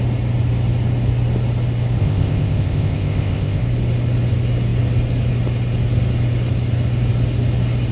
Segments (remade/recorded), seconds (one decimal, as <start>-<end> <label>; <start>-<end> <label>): 0.0-2.0 recorded; 2.0-3.6 remade; 3.6-7.9 recorded